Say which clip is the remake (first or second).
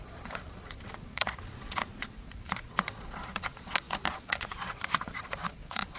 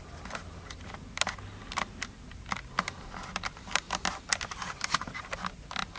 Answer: first